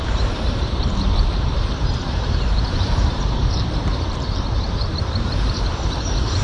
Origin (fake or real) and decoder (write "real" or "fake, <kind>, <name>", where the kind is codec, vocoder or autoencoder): fake, vocoder, BigVGAN v2